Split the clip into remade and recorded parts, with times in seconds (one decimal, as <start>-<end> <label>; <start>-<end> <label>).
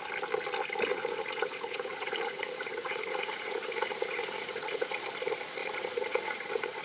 0.0-0.9 recorded; 0.9-5.0 remade; 5.0-5.6 recorded; 5.6-6.8 remade